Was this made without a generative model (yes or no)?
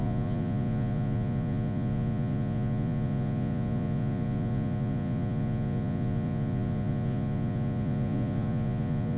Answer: no